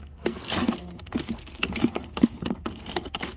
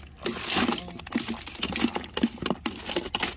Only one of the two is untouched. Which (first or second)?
second